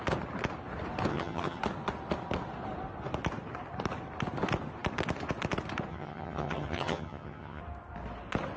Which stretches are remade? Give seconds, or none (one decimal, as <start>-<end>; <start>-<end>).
1.1-1.6; 5.9-7.6